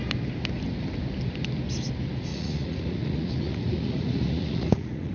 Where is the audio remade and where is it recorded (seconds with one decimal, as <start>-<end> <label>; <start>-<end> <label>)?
0.0-2.3 recorded; 2.3-5.1 remade